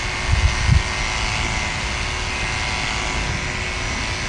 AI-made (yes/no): no